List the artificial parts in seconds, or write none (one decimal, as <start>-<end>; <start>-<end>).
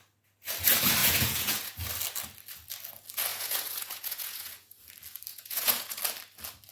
1.0-1.7; 3.3-4.8; 5.3-6.0